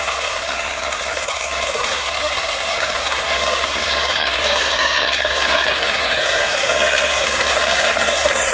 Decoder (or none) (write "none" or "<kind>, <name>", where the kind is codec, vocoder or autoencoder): codec, SNAC